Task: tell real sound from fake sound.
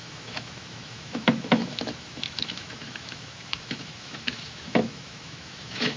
fake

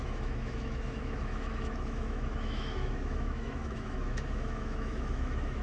fake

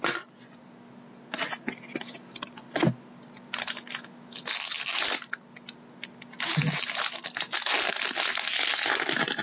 real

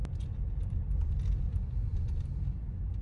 real